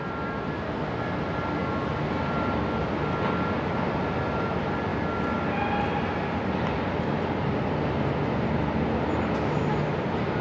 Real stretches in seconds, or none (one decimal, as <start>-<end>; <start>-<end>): 0.0-10.4